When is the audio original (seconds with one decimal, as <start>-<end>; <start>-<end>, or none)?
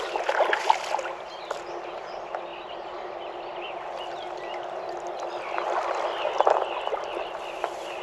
0.0-8.0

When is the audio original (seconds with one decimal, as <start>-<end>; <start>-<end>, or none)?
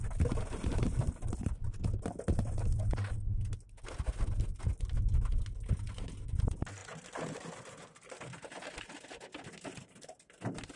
0.0-10.8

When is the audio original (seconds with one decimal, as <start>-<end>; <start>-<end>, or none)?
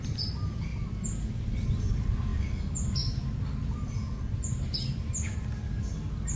0.0-6.4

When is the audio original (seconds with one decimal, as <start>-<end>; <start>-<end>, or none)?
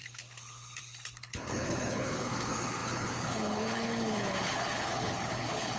none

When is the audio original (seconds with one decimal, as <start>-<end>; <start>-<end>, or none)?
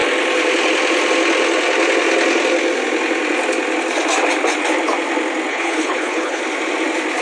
0.0-5.5; 6.4-7.2